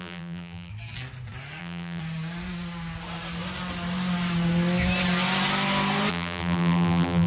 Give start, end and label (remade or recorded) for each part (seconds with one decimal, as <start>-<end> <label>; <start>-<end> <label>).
0.0-0.7 remade; 0.7-1.6 recorded; 1.6-2.0 remade; 2.0-6.1 recorded; 6.1-7.3 remade